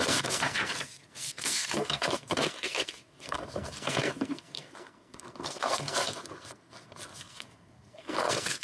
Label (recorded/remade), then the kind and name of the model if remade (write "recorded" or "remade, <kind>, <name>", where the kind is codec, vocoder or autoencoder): remade, codec, SNAC